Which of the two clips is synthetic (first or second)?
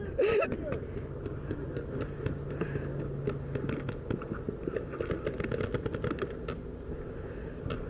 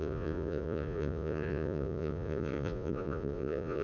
second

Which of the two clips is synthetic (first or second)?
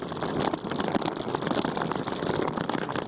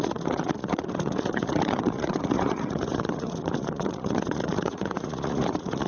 second